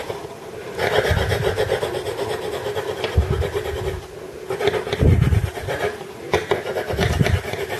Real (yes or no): yes